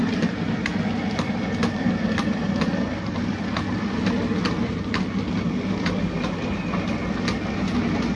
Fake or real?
real